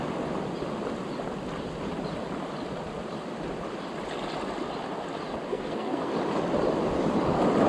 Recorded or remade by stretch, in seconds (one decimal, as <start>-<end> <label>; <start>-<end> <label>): 0.0-5.5 recorded; 5.5-6.1 remade; 6.1-7.7 recorded